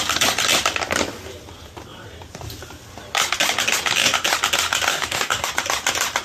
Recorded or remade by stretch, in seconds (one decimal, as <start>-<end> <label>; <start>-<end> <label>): 0.0-4.9 recorded; 4.9-5.5 remade; 5.5-6.2 recorded